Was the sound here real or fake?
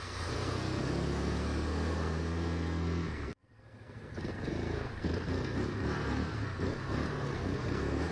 fake